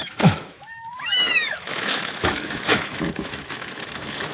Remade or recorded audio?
remade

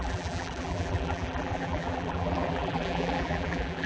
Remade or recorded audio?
remade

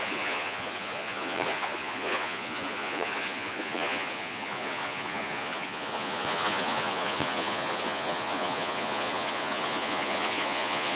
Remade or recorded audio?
remade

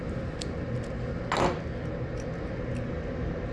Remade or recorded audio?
recorded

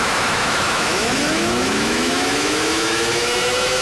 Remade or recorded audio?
remade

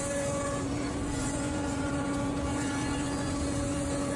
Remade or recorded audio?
remade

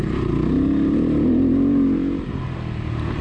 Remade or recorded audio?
recorded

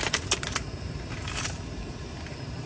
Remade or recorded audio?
remade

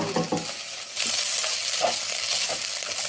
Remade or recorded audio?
recorded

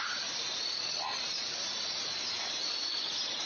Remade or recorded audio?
recorded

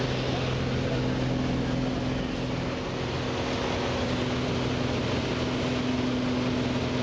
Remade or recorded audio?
recorded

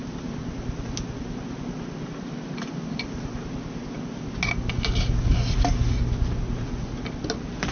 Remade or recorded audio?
recorded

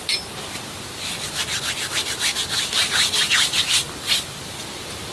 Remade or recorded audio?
recorded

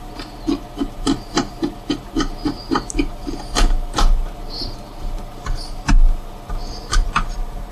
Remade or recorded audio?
recorded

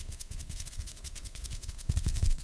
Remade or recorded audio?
remade